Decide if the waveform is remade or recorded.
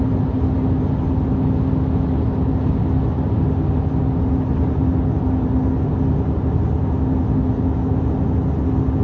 recorded